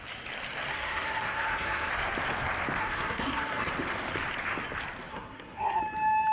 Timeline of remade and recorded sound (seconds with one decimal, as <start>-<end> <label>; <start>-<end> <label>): 0.0-0.7 recorded; 0.7-1.9 remade; 1.9-2.8 recorded; 2.8-3.7 remade; 3.7-5.1 recorded; 5.1-5.8 remade; 5.8-6.3 recorded